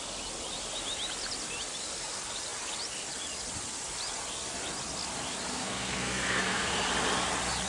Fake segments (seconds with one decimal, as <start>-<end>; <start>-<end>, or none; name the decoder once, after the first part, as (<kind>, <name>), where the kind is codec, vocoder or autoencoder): 5.5-6.7 (codec, SNAC)